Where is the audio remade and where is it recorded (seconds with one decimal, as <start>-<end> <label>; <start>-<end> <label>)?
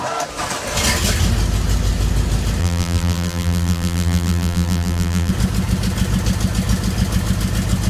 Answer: 0.0-2.6 recorded; 2.6-5.3 remade; 5.3-7.9 recorded